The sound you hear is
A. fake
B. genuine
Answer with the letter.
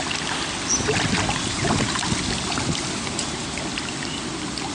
B